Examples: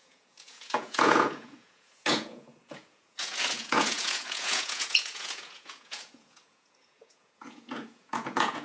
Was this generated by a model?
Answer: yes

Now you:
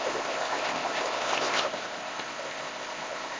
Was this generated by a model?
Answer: yes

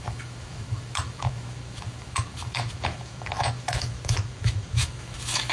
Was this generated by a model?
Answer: yes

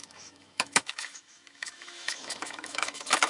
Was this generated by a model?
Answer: yes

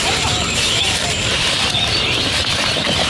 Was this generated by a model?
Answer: yes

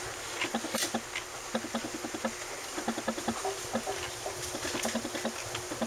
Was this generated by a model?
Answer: no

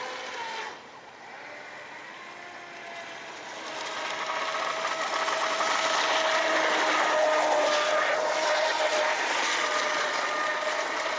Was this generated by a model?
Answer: no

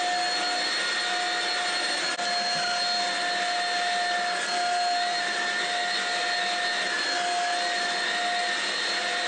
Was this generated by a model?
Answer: no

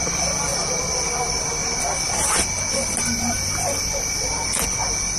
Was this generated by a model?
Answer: no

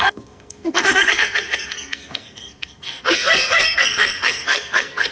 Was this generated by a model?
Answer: yes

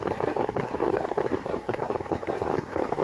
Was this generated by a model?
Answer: yes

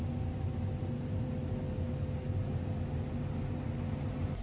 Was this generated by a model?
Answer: no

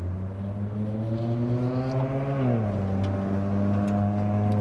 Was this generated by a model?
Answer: no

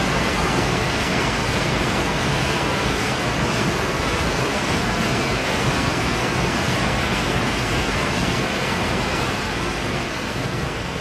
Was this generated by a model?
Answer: yes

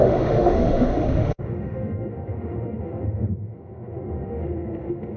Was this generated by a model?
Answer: yes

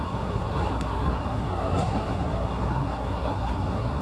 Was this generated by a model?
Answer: yes